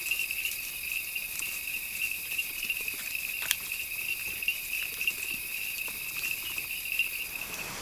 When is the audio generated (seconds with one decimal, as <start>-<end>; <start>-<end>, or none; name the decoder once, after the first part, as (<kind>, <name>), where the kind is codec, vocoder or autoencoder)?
1.1-3.9 (vocoder, BigVGAN v2); 5.5-7.2